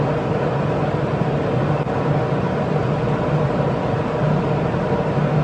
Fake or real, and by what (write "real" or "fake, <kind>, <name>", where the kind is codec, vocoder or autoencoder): real